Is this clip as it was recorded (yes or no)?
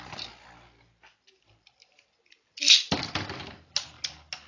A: yes